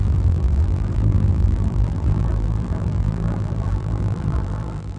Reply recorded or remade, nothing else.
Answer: remade